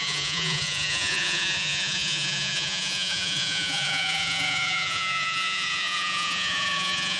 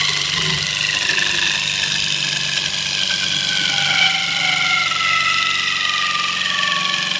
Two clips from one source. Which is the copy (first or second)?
first